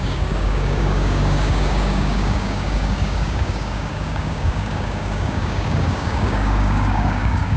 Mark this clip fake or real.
fake